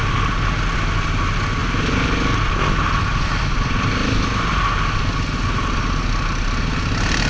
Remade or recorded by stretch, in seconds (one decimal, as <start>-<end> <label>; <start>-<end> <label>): 0.0-7.3 recorded